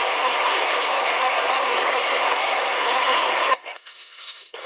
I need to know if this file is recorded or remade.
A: remade